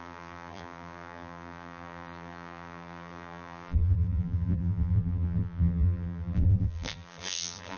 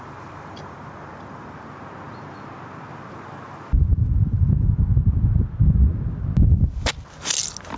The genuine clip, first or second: second